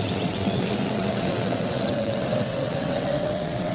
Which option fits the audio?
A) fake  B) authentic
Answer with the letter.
A